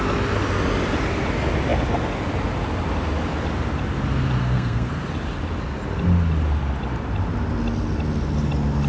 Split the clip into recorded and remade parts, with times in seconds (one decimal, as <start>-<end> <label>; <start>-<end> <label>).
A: 0.0-4.4 recorded; 4.4-4.9 remade; 4.9-8.9 recorded